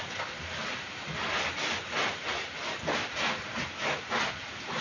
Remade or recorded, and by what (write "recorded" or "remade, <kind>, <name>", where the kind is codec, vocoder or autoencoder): remade, vocoder, BigVGAN v2